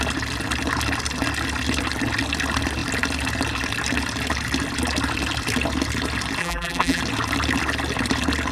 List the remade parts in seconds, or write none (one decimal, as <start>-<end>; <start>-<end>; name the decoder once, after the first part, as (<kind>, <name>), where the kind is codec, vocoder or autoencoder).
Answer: 6.4-7.0 (vocoder, BigVGAN v2)